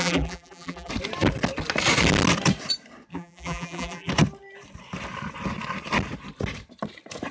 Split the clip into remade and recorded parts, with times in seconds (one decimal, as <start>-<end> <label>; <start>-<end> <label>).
0.0-0.9 remade; 0.9-3.1 recorded; 3.1-4.1 remade; 4.1-7.3 recorded